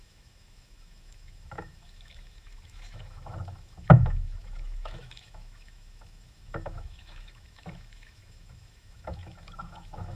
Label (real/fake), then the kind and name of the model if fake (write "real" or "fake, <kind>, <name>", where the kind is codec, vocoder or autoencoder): fake, autoencoder, DAC-VAE